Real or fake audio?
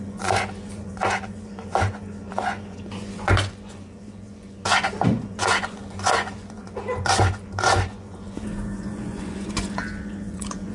fake